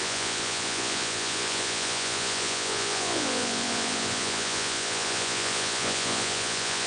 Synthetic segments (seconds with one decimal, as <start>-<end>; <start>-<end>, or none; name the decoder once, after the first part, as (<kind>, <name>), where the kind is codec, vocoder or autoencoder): 0.0-6.9 (vocoder, Vocos)

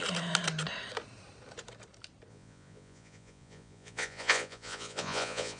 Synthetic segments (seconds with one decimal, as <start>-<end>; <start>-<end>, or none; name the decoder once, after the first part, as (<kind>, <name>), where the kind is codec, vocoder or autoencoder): 2.3-5.6 (vocoder, Vocos)

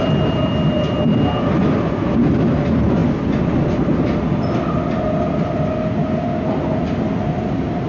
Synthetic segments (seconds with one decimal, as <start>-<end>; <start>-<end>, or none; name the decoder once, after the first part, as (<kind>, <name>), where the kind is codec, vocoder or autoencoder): none